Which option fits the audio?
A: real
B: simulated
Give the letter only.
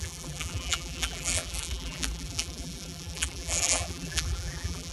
B